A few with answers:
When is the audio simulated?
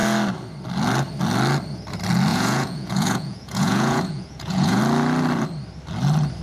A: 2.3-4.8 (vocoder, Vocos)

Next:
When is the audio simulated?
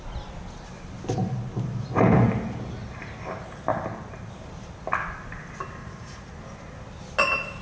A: 5.8-6.3 (vocoder, Vocos)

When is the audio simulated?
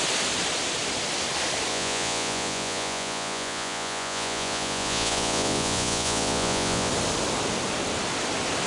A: 1.7-6.9 (vocoder, Vocos)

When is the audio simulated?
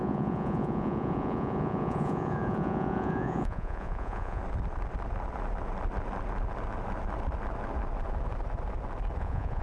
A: 0.0-4.4 (vocoder, Vocos); 9.2-9.6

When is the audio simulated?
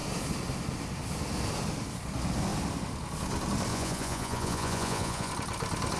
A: 3.7-5.3 (vocoder, Vocos)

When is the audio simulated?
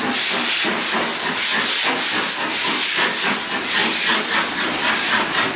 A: none